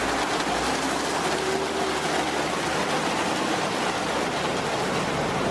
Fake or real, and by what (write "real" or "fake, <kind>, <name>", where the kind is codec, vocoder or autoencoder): real